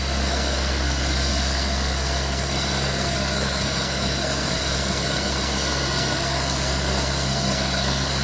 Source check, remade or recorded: remade